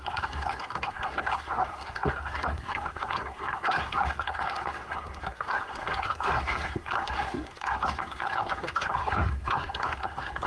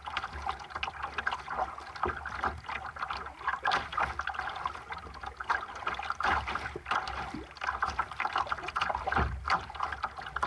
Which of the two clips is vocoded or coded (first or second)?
first